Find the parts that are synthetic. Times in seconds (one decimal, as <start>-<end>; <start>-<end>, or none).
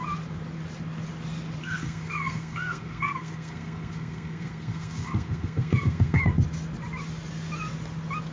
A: 1.6-6.2